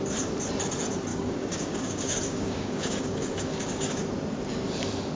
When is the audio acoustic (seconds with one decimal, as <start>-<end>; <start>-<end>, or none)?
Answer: 0.0-1.1; 3.8-5.1